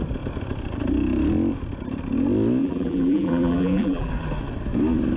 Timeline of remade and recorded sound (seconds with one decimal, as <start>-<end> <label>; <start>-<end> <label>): 0.0-2.6 recorded; 2.6-4.1 remade; 4.1-5.2 recorded